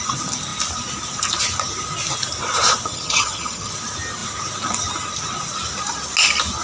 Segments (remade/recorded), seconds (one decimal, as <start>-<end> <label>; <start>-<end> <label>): 0.0-2.9 recorded; 2.9-3.7 remade; 3.7-6.6 recorded